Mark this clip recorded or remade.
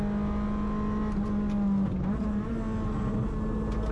recorded